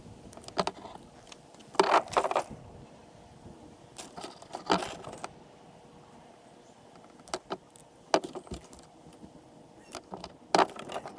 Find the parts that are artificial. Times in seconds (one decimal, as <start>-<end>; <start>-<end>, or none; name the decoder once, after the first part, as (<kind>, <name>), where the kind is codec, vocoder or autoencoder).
none